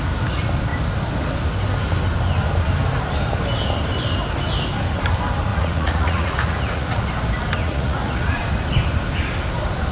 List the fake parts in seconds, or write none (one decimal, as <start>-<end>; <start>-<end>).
5.5-7.1; 7.6-8.4